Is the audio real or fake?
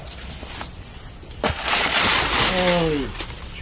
real